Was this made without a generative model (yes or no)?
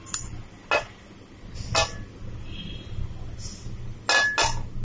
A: yes